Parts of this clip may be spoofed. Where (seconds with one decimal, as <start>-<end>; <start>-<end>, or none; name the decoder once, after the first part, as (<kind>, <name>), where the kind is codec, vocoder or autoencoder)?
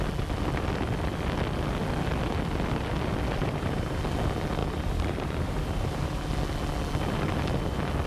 3.4-4.0 (vocoder, BigVGAN v2); 4.6-6.3